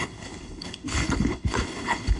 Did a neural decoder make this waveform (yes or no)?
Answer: yes